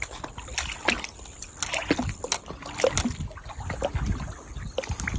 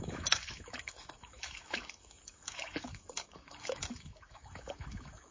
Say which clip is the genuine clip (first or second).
first